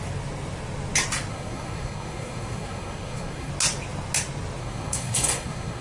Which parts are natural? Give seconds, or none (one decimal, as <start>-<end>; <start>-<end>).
0.0-1.3; 3.5-4.6